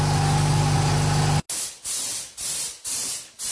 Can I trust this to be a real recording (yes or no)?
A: yes